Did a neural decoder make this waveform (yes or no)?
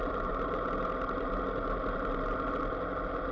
no